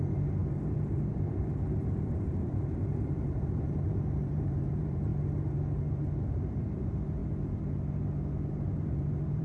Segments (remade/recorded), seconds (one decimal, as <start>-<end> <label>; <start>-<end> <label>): 0.0-5.1 remade; 5.1-5.9 recorded; 5.9-7.2 remade; 7.2-8.5 recorded; 8.5-9.4 remade